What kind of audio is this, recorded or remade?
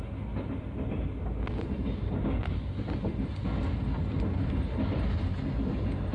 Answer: recorded